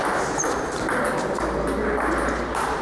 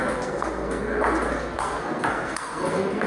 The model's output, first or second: second